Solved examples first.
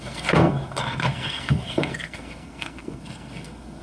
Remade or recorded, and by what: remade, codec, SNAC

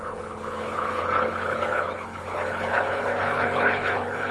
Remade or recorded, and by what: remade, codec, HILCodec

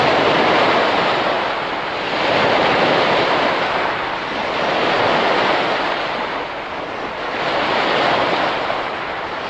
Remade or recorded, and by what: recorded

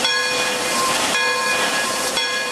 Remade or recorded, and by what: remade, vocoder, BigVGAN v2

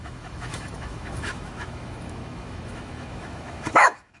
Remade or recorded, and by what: remade, autoencoder, DAC-VAE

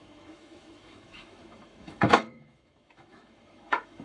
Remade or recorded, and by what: remade, autoencoder, DAC-VAE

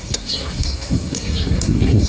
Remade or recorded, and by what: remade, codec, SNAC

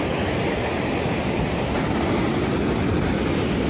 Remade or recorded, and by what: recorded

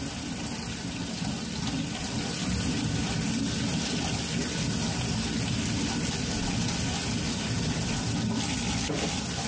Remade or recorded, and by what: recorded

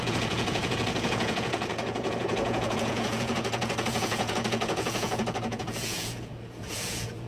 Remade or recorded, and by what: remade, vocoder, Vocos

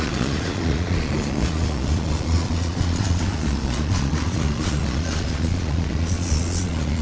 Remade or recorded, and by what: remade, vocoder, Vocos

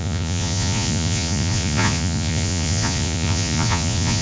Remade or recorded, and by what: remade, vocoder, Vocos